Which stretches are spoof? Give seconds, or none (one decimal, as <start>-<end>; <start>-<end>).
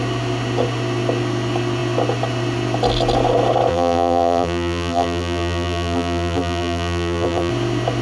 3.7-7.5